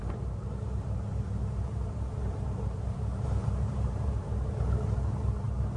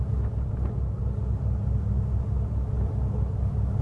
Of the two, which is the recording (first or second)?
second